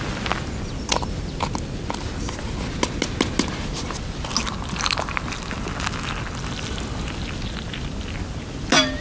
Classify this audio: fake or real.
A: real